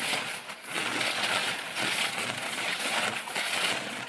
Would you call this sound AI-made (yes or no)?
yes